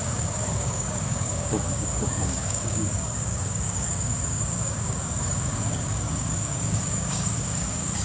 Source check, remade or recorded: remade